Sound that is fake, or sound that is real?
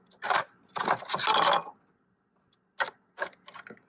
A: real